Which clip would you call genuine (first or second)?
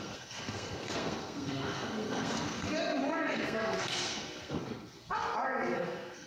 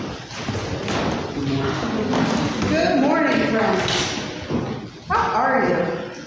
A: second